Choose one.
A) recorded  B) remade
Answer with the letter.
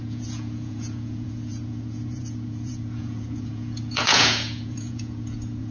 B